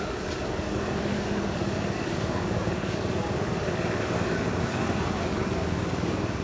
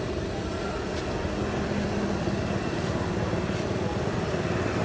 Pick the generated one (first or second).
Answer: first